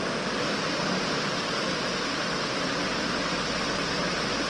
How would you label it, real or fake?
real